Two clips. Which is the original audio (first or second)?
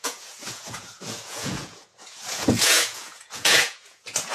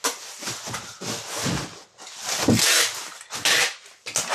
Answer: second